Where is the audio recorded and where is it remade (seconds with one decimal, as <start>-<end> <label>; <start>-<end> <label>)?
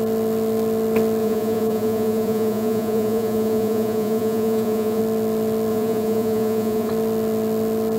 0.0-1.2 recorded; 1.2-5.0 remade; 5.0-5.7 recorded; 5.7-6.9 remade; 6.9-8.0 recorded